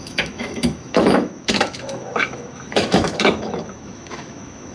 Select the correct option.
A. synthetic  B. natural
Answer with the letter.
A